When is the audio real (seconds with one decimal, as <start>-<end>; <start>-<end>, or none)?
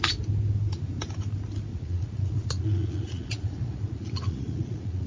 0.0-1.7